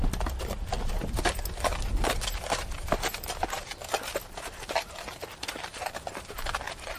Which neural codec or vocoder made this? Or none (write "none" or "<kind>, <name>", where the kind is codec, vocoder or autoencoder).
none